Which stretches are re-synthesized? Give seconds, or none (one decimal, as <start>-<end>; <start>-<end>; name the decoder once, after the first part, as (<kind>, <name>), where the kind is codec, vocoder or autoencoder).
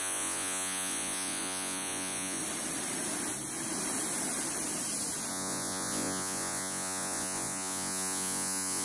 0.0-2.4 (vocoder, Vocos); 5.3-8.8